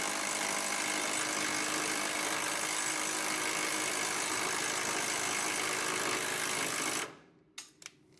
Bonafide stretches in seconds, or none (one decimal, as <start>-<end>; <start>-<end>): 0.0-1.5; 2.5-8.2